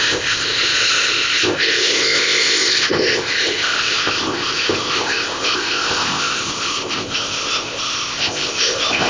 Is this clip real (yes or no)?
no